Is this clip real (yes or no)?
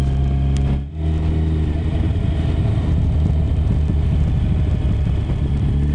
yes